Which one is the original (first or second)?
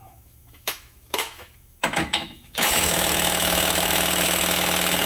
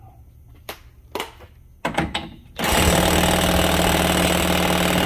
second